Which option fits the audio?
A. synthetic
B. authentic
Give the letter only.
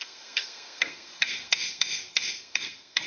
A